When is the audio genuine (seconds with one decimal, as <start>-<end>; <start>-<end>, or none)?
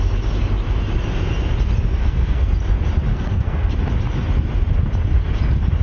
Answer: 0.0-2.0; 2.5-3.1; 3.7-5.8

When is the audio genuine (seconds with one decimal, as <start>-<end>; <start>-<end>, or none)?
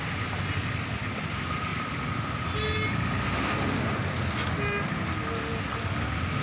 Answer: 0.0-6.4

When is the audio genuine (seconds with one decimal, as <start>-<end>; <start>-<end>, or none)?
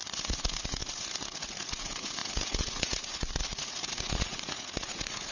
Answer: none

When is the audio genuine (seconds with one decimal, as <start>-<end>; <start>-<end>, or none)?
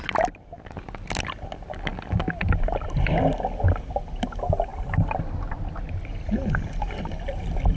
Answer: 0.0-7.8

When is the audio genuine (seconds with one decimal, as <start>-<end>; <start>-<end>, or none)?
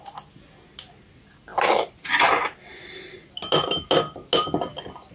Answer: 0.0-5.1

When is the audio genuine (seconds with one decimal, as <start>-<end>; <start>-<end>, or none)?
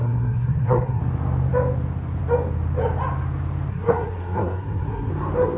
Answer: 1.0-3.7; 5.1-5.6